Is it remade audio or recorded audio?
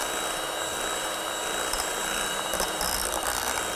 remade